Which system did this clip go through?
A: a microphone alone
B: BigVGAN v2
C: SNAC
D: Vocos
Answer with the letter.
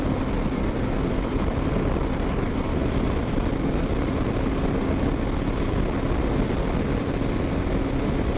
A